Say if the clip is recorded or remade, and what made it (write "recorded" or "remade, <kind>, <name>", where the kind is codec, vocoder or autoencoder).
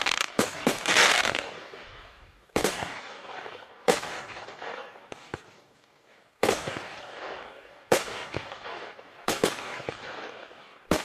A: remade, codec, DAC